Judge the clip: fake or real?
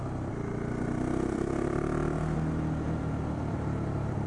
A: fake